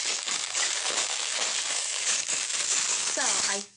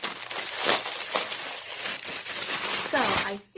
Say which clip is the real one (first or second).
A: second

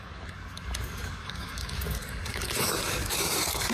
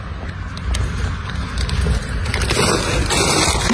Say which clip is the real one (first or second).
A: second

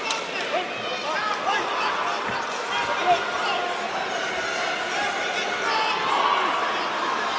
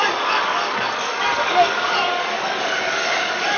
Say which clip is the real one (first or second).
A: first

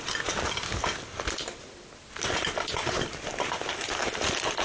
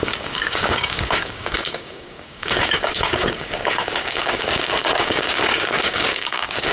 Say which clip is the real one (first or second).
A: first